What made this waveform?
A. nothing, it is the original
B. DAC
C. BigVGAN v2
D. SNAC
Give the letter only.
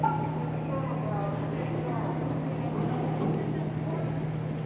A